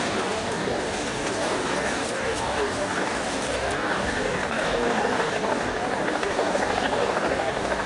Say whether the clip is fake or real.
fake